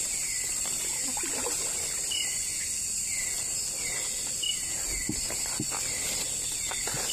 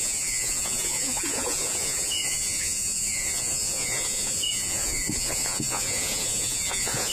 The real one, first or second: first